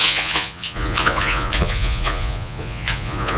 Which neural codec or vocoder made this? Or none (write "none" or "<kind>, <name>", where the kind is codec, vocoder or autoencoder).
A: vocoder, Vocos